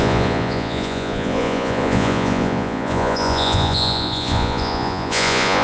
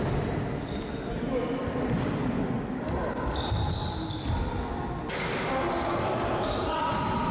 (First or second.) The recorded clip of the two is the second